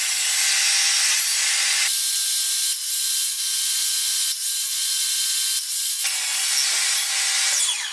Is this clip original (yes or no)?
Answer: yes